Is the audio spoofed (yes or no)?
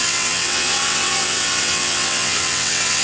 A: yes